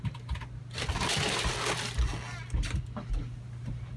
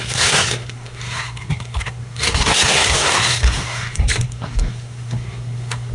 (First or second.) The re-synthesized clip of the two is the second